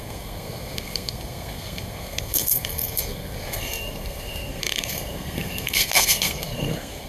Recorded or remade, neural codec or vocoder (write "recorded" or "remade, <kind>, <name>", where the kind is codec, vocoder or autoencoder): remade, codec, SNAC